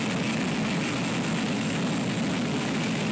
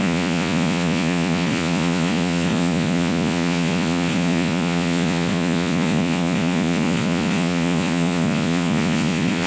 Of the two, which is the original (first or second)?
first